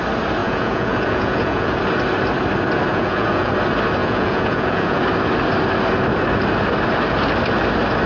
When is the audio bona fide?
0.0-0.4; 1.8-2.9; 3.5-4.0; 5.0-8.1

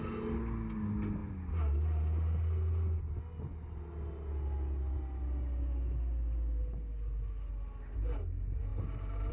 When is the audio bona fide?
0.0-9.3

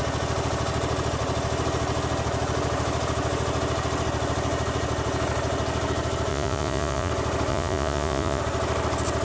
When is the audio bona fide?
0.0-6.3; 7.1-7.5; 8.4-9.2

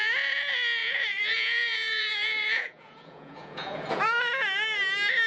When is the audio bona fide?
0.0-0.8; 4.0-5.3